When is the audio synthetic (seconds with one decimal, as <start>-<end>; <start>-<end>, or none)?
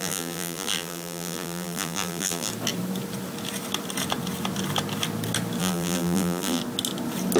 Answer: 0.0-2.5; 5.6-6.6